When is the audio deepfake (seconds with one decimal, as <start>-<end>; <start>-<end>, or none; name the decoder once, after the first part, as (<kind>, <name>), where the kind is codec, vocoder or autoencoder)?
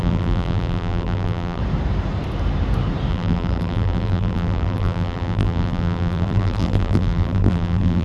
0.0-1.6 (vocoder, BigVGAN v2); 3.1-8.0